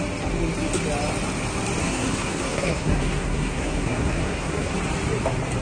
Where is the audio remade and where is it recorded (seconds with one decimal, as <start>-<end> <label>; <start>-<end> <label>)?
0.0-1.8 recorded; 1.8-4.7 remade; 4.7-5.6 recorded

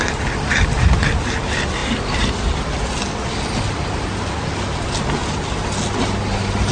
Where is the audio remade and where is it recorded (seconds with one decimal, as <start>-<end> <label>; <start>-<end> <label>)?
0.0-1.8 recorded; 1.8-2.3 remade; 2.3-6.7 recorded

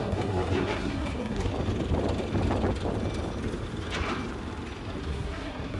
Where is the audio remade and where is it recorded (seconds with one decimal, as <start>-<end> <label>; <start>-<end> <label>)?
0.0-1.5 remade; 1.5-5.0 recorded; 5.0-5.8 remade

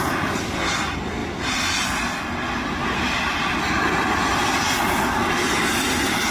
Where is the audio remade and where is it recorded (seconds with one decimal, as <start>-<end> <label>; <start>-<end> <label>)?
0.0-6.3 recorded

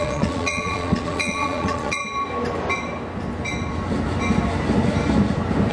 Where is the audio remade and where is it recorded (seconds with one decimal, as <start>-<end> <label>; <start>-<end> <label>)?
0.0-2.0 remade; 2.0-5.7 recorded

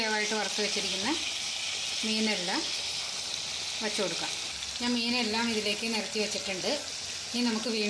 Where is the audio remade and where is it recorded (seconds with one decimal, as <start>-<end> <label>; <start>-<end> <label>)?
0.0-7.9 recorded